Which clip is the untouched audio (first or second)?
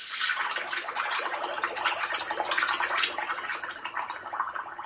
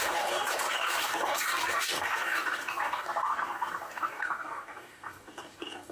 first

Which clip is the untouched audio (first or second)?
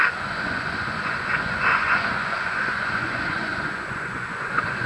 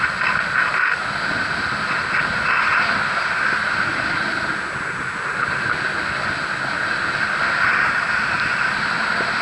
second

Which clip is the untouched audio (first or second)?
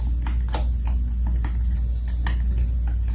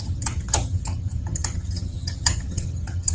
first